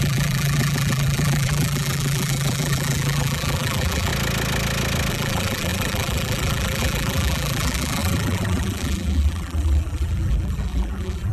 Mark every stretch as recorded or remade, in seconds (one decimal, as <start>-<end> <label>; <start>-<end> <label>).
0.0-4.1 remade; 4.1-5.1 recorded; 5.1-11.3 remade